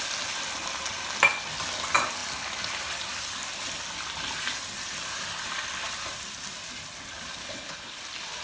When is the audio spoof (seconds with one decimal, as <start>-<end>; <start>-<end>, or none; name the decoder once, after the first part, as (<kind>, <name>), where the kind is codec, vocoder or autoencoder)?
7.4-8.0 (codec, HILCodec)